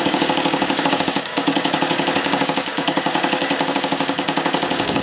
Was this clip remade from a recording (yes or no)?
yes